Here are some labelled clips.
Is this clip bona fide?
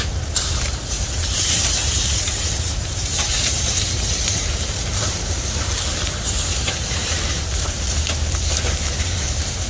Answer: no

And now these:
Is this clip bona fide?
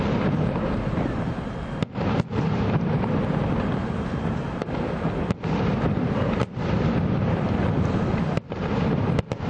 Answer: no